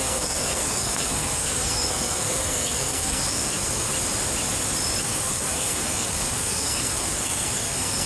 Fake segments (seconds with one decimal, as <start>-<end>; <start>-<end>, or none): 0.0-3.9; 5.0-8.1